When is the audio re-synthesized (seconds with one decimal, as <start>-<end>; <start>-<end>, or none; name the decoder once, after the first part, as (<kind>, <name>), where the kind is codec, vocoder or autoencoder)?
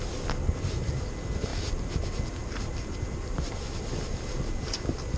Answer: none